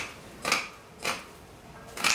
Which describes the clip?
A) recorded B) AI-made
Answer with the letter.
B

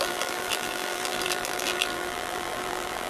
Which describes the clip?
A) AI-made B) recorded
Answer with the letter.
A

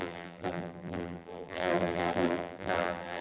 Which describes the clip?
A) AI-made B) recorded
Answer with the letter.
A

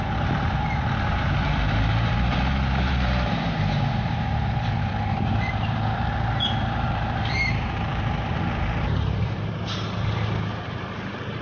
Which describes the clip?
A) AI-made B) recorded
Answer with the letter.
A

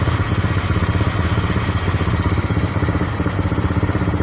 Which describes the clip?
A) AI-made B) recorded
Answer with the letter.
B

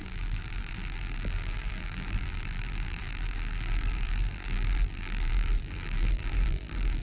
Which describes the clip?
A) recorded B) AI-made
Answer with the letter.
B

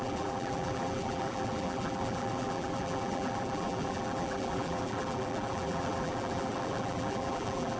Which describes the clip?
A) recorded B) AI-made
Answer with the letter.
B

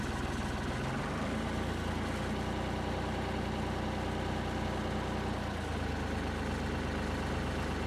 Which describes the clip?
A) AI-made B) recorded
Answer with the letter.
B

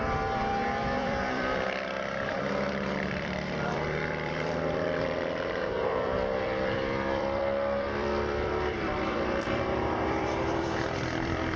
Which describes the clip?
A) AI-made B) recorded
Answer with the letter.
A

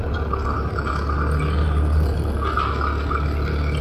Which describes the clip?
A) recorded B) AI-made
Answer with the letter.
A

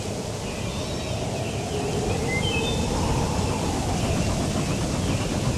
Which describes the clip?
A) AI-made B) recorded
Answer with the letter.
B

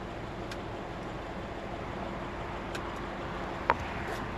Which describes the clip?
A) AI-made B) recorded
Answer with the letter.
B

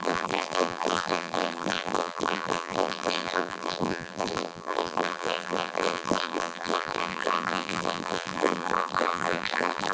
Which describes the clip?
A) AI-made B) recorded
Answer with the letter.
A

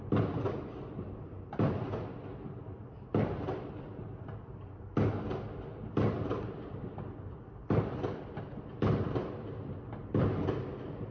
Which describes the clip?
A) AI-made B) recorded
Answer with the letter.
A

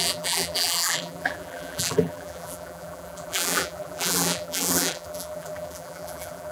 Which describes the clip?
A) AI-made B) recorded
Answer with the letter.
A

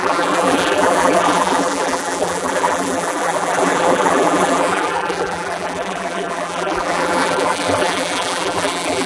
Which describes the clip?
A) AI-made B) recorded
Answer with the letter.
A